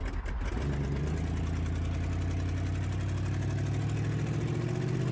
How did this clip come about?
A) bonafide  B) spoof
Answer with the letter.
A